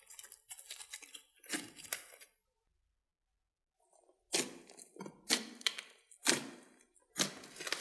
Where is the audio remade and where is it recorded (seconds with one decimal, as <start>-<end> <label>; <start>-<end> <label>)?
0.0-7.8 recorded